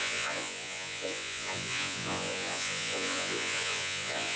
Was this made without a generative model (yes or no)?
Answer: no